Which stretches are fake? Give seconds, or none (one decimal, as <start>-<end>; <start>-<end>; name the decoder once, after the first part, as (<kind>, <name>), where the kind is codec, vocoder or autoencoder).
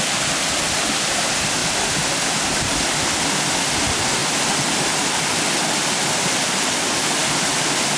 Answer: none